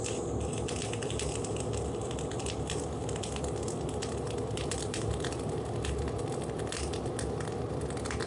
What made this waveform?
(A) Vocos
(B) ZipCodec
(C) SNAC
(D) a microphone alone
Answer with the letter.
D